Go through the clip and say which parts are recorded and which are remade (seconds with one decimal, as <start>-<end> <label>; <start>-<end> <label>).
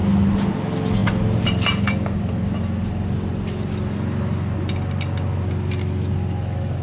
0.0-6.8 recorded